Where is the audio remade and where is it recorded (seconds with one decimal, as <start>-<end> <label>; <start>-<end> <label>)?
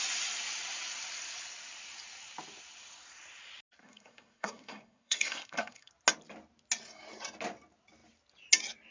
0.0-3.8 recorded; 3.8-5.9 remade; 5.9-8.9 recorded